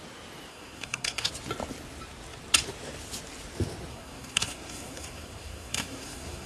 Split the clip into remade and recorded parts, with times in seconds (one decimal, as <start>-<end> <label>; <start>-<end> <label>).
0.0-0.5 recorded; 0.5-1.3 remade; 1.3-3.9 recorded; 3.9-6.5 remade